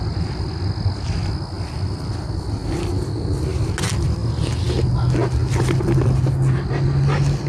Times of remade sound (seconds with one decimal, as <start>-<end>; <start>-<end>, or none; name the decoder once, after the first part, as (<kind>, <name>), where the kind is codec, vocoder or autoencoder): none